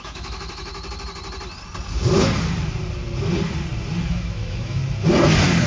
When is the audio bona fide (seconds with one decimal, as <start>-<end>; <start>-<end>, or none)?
0.7-4.1; 4.8-5.7